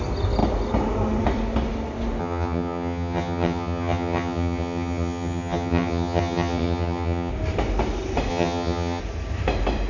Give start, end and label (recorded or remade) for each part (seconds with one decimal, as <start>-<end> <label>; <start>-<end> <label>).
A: 0.0-2.2 recorded; 2.2-7.3 remade; 7.3-8.3 recorded; 8.3-9.0 remade; 9.0-9.9 recorded